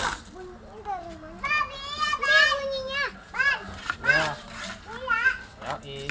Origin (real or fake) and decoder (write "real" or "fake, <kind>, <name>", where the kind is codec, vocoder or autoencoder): real